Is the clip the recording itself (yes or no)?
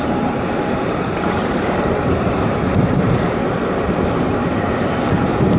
no